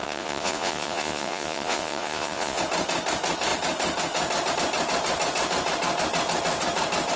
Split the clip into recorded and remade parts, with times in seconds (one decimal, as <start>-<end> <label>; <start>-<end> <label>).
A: 0.0-2.6 remade; 2.6-7.2 recorded